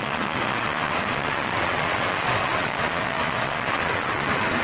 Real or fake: fake